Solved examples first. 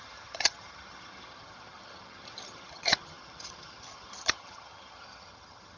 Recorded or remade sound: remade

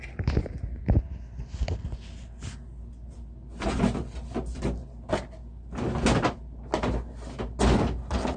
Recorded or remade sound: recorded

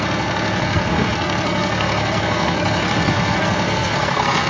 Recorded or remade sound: remade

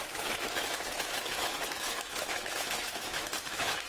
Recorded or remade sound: remade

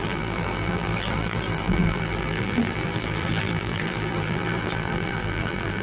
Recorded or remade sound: remade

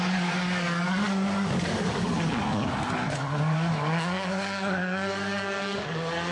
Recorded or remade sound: remade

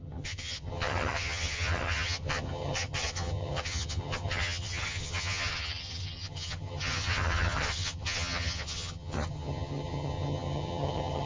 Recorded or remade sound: remade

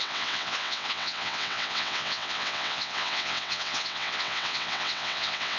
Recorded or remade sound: remade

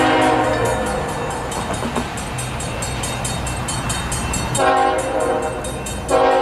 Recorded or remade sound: recorded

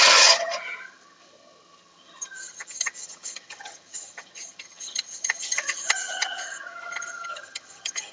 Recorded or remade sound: remade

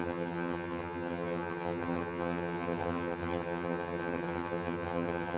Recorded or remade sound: remade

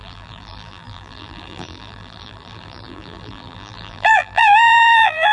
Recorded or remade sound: remade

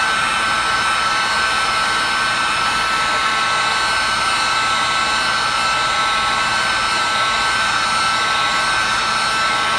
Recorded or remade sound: recorded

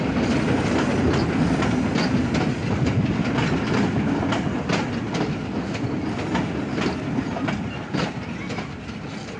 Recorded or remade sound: recorded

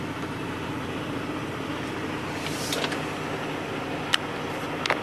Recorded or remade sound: recorded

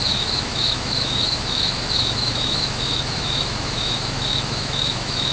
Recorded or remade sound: remade